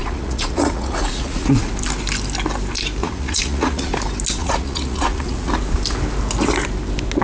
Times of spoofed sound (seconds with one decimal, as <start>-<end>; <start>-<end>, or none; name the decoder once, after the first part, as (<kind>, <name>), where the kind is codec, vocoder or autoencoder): 0.0-1.7 (vocoder, Vocos); 3.0-3.9; 4.4-5.5